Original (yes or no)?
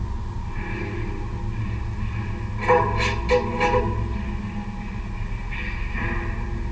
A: yes